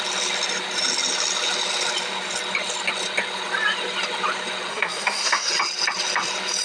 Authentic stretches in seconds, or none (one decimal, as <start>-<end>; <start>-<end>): 0.0-4.7; 5.5-6.6